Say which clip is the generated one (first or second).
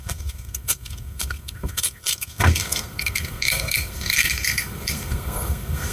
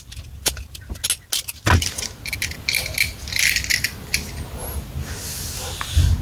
first